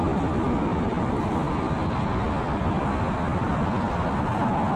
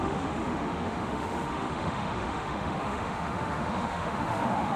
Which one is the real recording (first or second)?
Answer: first